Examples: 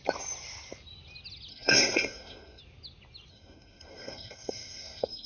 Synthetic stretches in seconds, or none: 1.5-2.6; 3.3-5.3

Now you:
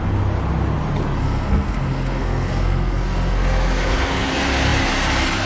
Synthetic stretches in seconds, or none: 1.2-4.3

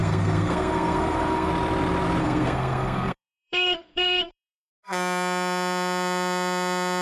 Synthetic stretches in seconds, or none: 0.0-1.5; 2.2-4.7

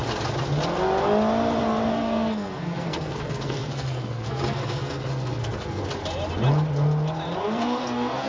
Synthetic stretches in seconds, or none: 1.9-5.8; 7.4-8.3